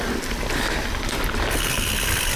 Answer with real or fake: real